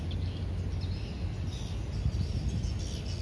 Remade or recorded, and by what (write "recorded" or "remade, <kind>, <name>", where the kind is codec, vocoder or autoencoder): recorded